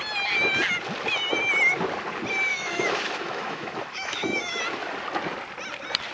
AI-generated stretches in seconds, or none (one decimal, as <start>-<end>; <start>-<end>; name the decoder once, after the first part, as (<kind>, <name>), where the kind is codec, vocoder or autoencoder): 2.5-4.6 (autoencoder, DAC-VAE)